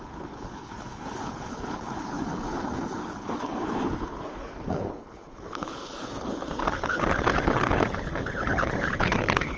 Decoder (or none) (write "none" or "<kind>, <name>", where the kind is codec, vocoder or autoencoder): codec, HILCodec